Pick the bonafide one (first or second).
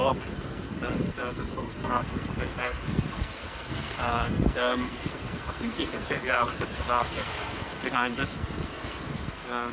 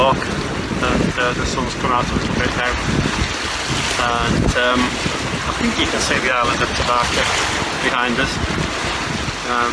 second